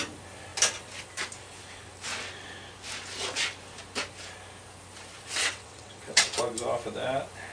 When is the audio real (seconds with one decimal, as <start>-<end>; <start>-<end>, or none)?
0.0-5.4; 6.4-7.5